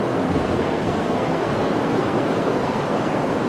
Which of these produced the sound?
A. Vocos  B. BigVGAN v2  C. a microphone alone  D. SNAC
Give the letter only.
D